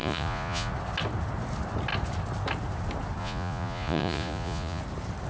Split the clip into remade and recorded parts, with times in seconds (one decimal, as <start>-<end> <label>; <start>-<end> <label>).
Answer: 0.0-0.7 remade; 0.7-3.2 recorded; 3.2-4.8 remade; 4.8-5.3 recorded